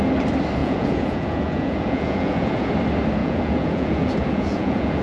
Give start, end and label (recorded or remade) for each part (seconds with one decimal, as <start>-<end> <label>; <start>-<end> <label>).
0.0-0.6 recorded; 0.6-2.7 remade; 2.7-3.2 recorded; 3.2-5.0 remade